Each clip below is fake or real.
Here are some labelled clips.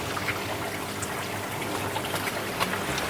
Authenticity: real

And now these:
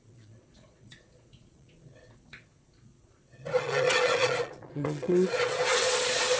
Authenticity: fake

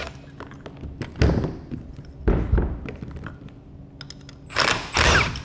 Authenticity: real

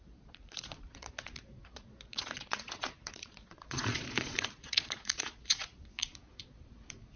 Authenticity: fake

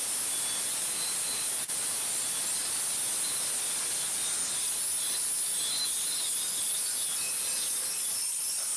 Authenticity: real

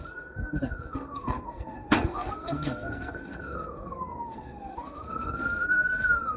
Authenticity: fake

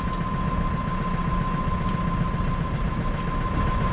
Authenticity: real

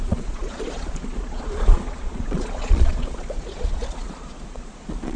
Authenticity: fake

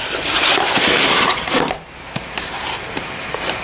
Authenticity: real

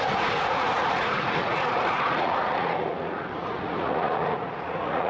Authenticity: fake